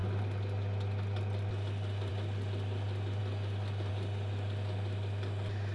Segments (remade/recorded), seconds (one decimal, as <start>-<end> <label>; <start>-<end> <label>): 0.0-5.7 recorded